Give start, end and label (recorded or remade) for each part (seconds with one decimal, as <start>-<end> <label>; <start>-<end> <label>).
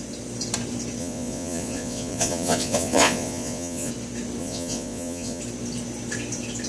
0.0-1.0 recorded; 1.0-3.9 remade; 3.9-4.4 recorded; 4.4-5.4 remade; 5.4-6.7 recorded